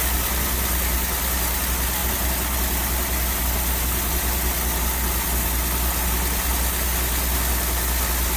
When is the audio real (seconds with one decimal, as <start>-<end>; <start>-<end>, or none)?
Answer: 0.0-8.4